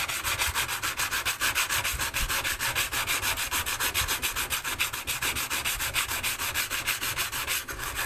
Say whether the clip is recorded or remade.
recorded